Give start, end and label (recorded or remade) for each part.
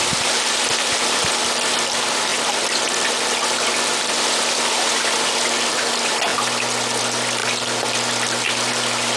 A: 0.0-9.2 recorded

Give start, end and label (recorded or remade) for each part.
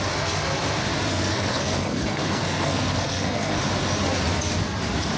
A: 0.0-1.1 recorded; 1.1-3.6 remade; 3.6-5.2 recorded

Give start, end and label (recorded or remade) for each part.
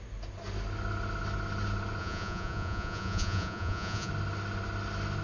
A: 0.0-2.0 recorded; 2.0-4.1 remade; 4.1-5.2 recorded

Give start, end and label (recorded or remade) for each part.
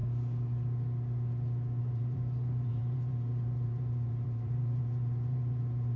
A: 0.0-1.8 recorded; 1.8-6.0 remade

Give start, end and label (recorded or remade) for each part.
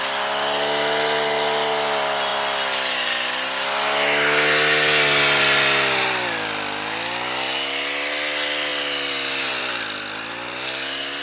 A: 0.0-11.2 recorded